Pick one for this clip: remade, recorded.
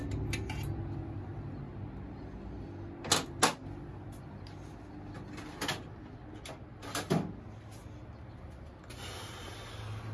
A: recorded